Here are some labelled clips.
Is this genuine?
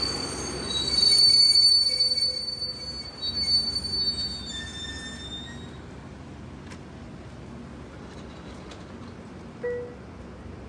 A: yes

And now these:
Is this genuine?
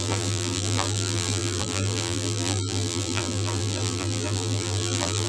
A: no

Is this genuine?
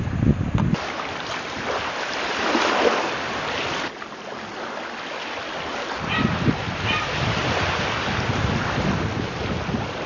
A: yes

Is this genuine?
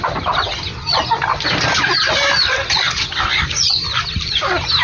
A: yes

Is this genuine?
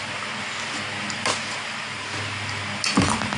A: yes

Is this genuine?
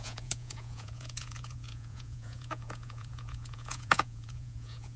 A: no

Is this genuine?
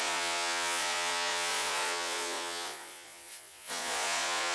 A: no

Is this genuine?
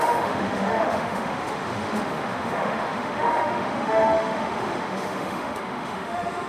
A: no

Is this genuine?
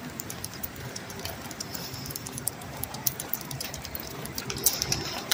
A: no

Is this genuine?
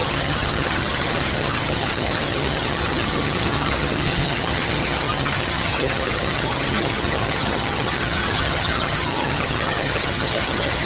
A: no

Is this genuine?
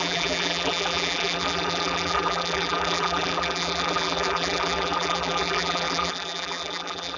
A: no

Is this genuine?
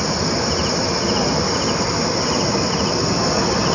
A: yes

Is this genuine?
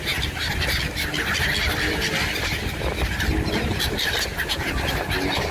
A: yes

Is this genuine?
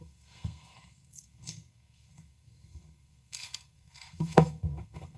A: no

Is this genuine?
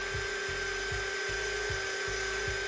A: yes